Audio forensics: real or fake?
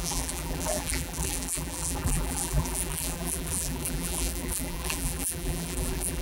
fake